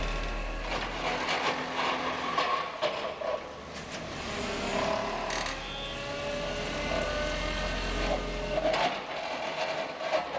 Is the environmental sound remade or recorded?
recorded